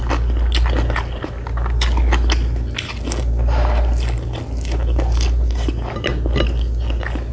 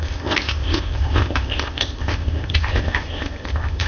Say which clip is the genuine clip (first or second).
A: first